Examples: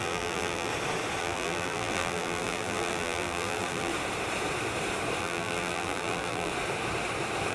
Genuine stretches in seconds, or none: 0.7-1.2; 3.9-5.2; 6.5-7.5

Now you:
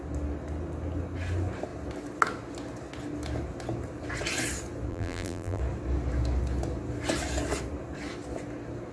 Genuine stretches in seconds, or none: 0.0-4.9; 5.6-8.9

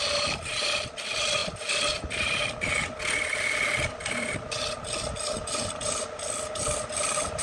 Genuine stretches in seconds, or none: 0.0-7.4

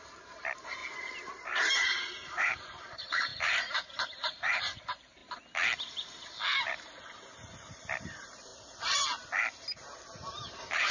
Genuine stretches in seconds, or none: 0.8-1.3; 5.2-6.6; 8.5-10.3

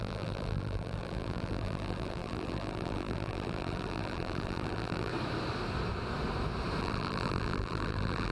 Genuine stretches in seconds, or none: 5.1-6.8

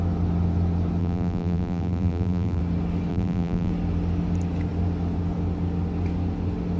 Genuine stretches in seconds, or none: 0.0-1.0; 2.6-3.1; 3.7-6.8